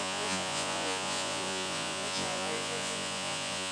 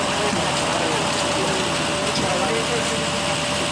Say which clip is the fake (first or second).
first